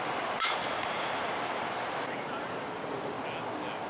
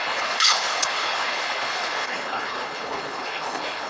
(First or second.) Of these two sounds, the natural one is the first